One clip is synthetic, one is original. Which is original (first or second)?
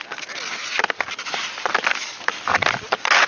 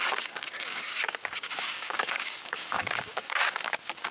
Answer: first